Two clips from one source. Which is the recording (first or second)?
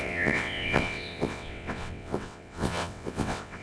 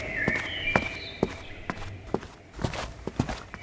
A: second